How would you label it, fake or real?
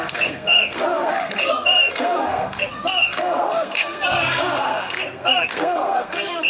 fake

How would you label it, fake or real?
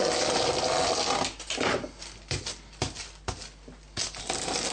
real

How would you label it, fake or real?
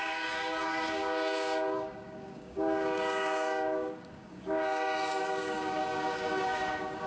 fake